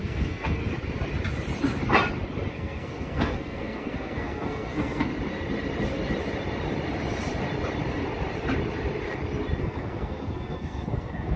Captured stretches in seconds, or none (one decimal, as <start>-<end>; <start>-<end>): 0.6-2.5; 5.1-9.6